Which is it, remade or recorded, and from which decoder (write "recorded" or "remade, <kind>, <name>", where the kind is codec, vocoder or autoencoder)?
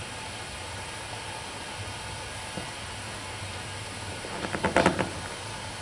recorded